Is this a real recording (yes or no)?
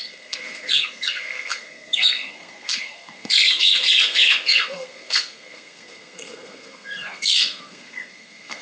no